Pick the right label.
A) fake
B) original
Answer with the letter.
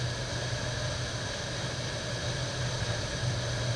B